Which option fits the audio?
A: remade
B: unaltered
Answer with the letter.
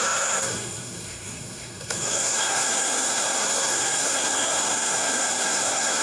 A